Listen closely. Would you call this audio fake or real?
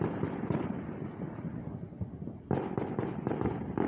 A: real